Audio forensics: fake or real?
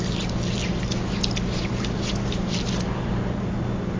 real